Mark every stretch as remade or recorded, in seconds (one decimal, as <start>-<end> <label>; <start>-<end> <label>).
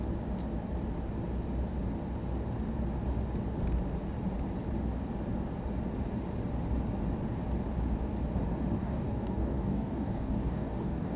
0.0-8.8 recorded; 8.8-11.2 remade